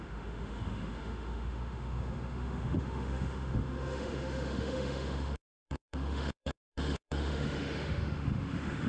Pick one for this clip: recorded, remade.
remade